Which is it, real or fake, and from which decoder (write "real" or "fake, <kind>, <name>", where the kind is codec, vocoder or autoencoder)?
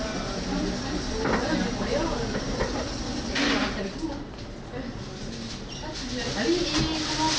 real